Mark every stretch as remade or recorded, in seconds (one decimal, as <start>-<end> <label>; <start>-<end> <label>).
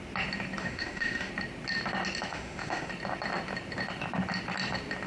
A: 0.0-0.6 recorded; 0.6-1.3 remade; 1.3-2.3 recorded; 2.3-2.9 remade; 2.9-5.1 recorded